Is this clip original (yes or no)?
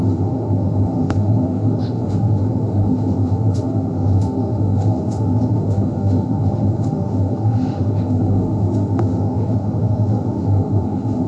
no